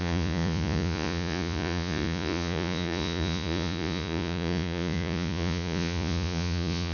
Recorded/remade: remade